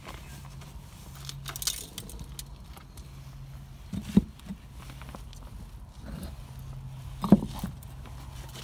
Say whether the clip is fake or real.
real